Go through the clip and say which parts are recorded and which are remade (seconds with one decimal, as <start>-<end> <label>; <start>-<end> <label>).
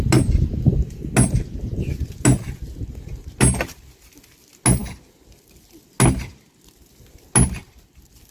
0.0-8.3 recorded